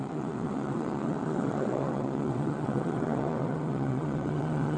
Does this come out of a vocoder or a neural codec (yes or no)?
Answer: yes